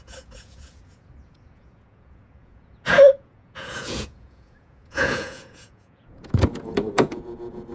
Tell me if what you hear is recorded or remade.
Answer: remade